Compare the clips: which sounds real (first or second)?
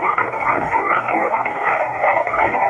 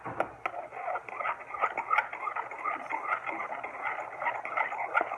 second